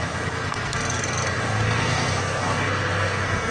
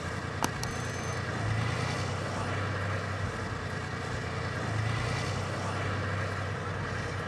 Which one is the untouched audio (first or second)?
second